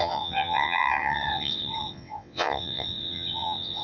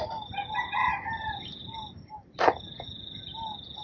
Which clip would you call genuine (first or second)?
second